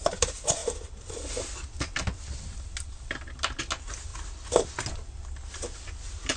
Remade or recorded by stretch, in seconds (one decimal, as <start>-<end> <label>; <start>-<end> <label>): 0.0-6.4 recorded